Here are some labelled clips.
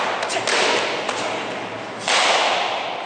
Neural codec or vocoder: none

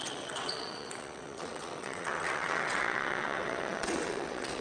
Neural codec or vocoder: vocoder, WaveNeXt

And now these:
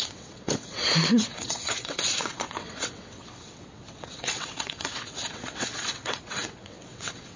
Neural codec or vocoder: vocoder, WaveNeXt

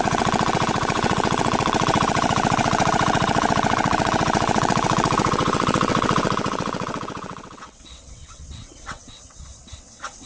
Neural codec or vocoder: vocoder, WaveNeXt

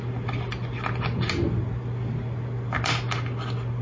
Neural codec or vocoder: none